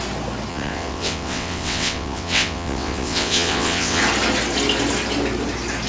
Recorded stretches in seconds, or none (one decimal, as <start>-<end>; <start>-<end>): 0.0-0.5; 4.0-5.9